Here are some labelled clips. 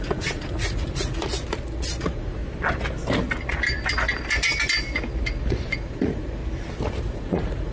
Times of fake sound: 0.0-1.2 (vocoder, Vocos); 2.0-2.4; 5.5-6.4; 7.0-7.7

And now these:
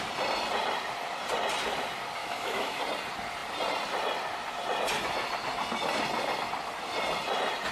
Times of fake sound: 2.2-2.8 (autoencoder, DAC-VAE)

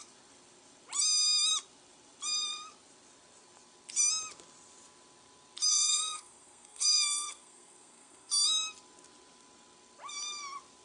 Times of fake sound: 5.7-8.3 (codec, SNAC)

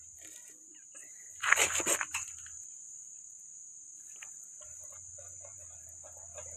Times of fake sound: none

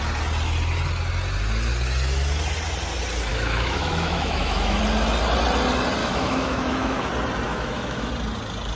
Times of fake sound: 3.3-4.8 (autoencoder, DAC-VAE); 6.0-7.1; 7.5-8.1